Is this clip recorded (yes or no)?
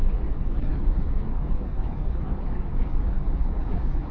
no